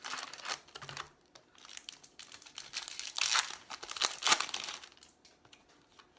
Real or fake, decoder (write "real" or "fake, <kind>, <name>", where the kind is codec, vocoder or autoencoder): real